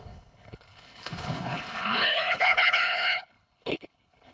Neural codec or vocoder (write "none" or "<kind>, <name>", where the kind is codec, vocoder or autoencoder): codec, HILCodec